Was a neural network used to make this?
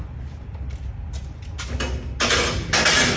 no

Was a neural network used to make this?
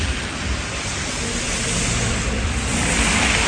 no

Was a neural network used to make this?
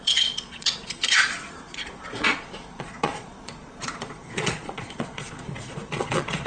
yes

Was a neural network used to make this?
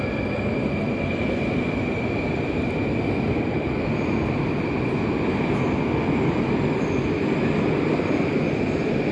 no